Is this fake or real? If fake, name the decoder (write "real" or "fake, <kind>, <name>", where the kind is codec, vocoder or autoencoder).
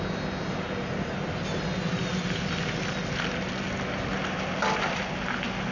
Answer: real